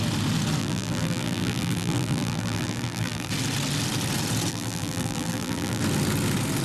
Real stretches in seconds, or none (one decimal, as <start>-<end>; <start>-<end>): 0.0-0.6; 3.3-4.5; 5.8-6.6